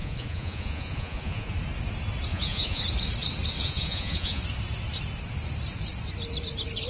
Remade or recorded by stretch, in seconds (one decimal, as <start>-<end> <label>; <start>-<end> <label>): 0.0-1.5 remade; 1.5-2.3 recorded; 2.3-2.8 remade; 2.8-3.6 recorded; 3.6-4.4 remade; 4.4-6.9 recorded